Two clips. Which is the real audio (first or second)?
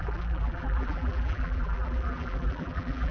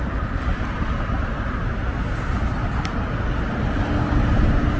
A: second